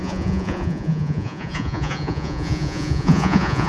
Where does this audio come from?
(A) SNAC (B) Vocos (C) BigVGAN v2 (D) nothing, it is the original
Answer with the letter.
B